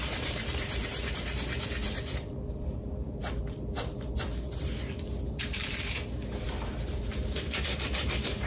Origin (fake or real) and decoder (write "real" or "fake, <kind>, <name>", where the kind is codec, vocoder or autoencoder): fake, vocoder, BigVGAN v2